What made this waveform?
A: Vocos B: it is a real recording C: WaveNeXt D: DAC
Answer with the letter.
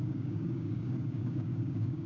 D